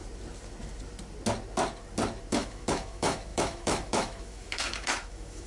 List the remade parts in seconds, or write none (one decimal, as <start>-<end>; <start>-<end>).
2.3-5.5